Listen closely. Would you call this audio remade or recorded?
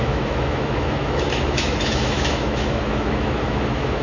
remade